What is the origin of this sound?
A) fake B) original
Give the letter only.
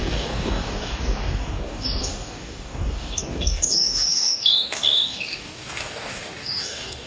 A